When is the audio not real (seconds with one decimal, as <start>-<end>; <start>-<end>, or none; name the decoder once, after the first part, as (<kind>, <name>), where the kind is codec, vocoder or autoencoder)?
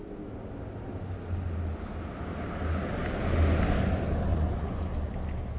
4.3-4.9 (vocoder, Vocos)